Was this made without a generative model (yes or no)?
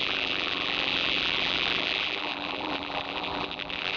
no